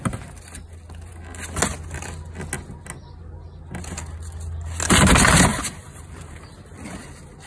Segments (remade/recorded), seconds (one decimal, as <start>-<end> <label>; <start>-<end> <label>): 0.0-5.5 recorded; 5.5-6.4 remade; 6.4-7.5 recorded